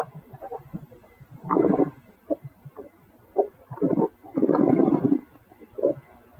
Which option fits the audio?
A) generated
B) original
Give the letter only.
A